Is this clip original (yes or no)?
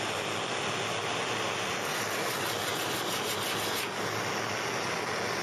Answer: yes